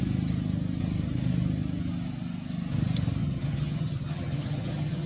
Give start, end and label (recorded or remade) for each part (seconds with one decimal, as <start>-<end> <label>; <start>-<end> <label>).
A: 0.0-3.2 recorded; 3.2-5.1 remade